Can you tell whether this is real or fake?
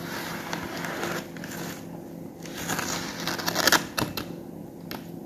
real